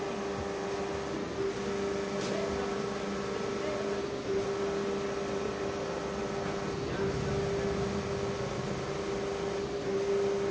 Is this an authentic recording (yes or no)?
yes